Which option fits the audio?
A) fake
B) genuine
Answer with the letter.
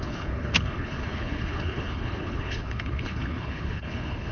A